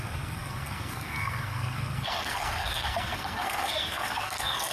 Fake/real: fake